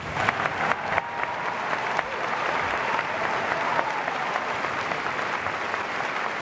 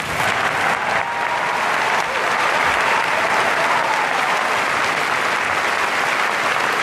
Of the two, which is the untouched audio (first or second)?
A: second